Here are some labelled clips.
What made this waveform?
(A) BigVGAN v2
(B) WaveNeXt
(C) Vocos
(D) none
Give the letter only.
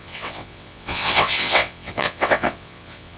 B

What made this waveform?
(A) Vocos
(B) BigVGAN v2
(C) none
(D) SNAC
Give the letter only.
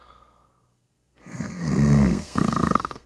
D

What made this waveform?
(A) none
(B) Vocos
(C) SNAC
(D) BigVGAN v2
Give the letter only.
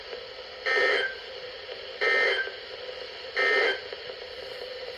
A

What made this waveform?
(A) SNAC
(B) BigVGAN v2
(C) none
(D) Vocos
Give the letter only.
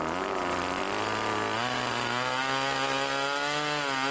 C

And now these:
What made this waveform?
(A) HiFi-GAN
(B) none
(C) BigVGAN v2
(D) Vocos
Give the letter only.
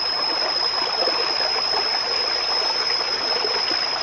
B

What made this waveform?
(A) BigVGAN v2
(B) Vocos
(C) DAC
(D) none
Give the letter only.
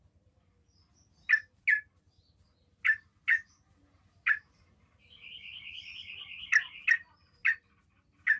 D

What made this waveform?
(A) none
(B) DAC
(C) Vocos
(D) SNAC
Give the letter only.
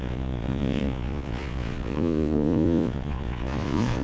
C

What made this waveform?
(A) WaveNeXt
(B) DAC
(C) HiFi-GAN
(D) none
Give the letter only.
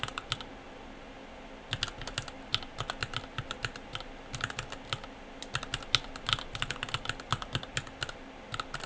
D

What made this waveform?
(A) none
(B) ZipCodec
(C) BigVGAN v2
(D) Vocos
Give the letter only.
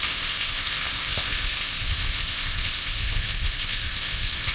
B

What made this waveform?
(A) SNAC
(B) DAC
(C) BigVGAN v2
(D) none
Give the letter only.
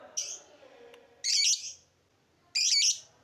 D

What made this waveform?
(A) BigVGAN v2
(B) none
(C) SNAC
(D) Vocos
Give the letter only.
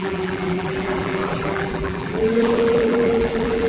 A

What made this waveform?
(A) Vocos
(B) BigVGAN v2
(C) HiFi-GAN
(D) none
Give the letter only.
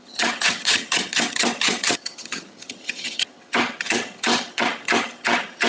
C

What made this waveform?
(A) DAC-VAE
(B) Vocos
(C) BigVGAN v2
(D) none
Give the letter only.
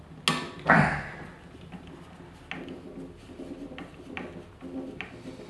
D